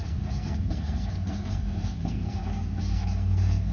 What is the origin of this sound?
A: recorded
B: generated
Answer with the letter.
B